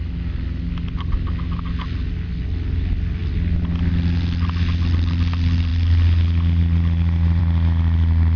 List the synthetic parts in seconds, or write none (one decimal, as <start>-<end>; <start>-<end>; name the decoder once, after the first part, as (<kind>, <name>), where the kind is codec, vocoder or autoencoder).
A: none